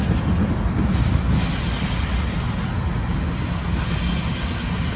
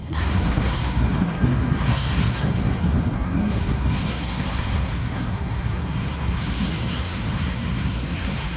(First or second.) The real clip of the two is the first